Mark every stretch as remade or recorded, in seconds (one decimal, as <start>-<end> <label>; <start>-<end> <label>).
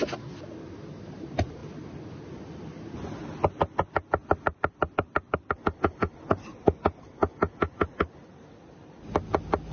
0.0-1.6 recorded; 1.6-2.8 remade; 2.8-4.2 recorded; 4.2-5.5 remade; 5.5-9.7 recorded